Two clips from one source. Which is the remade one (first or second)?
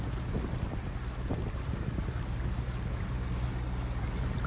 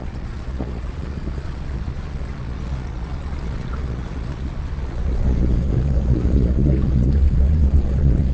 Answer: second